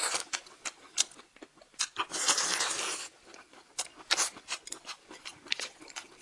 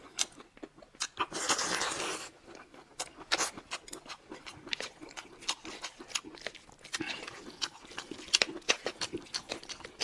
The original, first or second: second